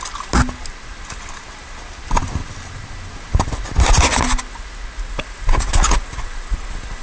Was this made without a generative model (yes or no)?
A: yes